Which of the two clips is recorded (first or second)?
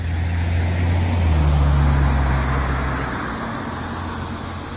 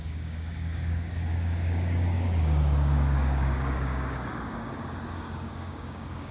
first